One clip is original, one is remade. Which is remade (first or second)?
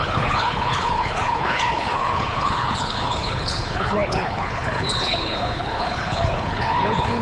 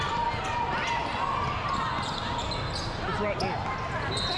first